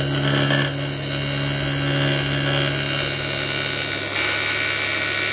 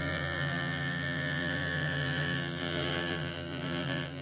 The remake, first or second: second